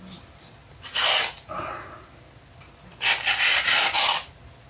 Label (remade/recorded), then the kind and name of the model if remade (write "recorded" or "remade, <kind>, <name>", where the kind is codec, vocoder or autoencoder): recorded